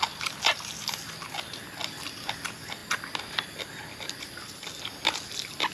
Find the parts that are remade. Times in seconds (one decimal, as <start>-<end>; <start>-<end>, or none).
none